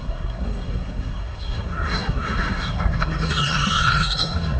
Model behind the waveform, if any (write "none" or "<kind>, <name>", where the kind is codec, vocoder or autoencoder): codec, SNAC